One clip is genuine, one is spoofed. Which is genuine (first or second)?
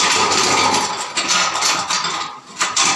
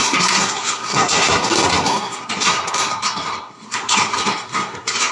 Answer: first